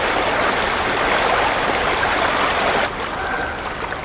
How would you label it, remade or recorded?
recorded